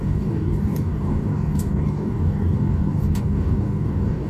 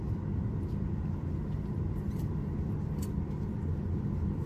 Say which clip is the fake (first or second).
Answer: first